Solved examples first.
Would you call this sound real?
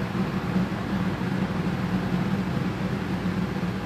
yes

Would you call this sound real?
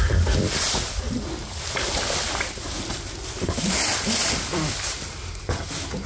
yes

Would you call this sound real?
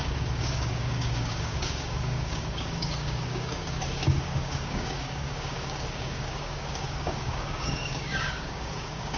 no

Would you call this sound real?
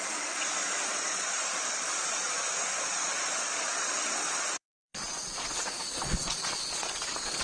no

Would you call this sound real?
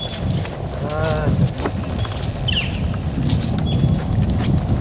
yes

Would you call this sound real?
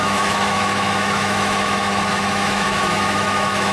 no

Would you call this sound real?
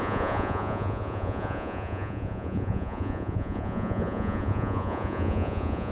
no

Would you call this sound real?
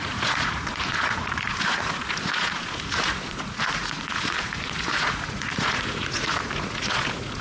no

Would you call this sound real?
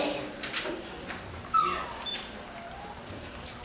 yes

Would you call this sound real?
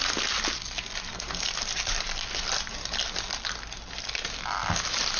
yes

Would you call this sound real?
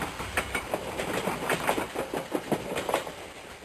yes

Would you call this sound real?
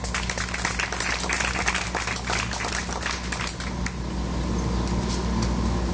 yes